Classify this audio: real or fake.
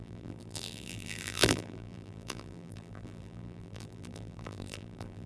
fake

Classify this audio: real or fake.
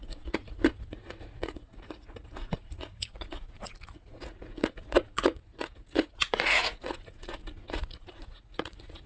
fake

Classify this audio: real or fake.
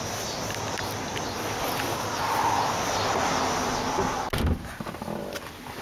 real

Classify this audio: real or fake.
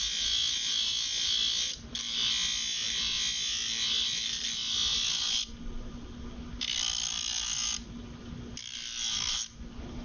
real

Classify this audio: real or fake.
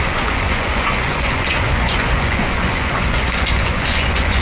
fake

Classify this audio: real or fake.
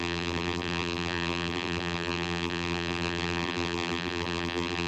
fake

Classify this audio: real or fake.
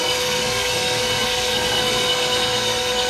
fake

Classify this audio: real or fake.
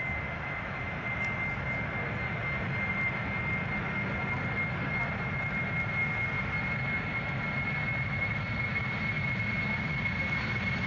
real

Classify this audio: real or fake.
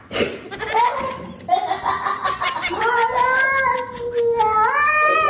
real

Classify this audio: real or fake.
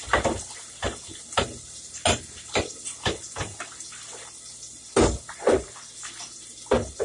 real